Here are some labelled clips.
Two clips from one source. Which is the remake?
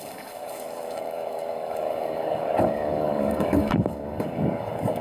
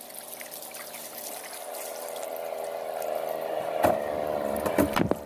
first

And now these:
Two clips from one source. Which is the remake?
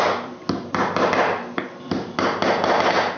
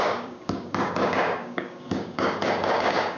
second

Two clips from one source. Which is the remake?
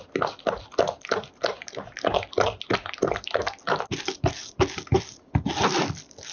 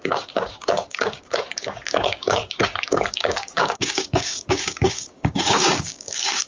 second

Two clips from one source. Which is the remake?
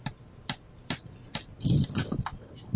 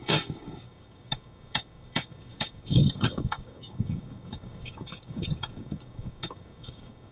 second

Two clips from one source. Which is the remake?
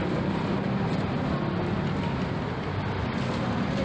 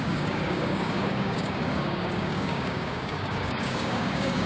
second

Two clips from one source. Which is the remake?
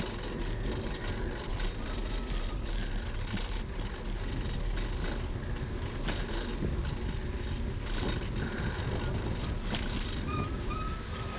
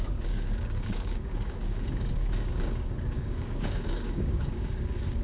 second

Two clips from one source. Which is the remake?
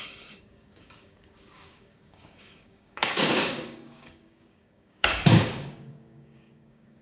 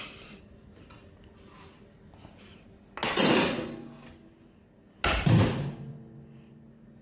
first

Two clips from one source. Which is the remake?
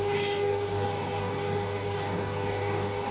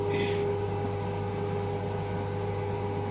first